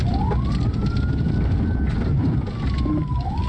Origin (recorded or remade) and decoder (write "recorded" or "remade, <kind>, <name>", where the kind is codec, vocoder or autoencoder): recorded